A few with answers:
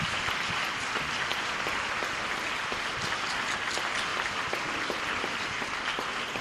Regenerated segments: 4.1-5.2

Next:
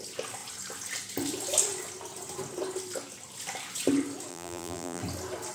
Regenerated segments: 4.3-5.0